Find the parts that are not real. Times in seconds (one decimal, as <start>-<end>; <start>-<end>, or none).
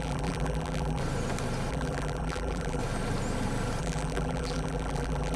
0.0-1.0; 1.7-2.8; 3.8-5.4